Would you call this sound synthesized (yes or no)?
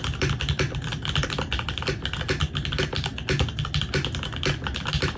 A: no